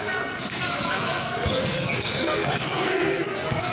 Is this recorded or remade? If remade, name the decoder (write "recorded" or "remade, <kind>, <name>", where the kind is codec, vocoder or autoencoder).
remade, codec, SNAC